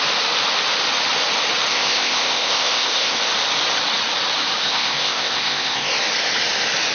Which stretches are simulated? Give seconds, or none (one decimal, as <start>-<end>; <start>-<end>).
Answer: 1.7-3.2; 4.6-5.9